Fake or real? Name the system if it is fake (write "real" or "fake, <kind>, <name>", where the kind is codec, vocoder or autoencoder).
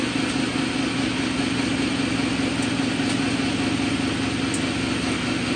real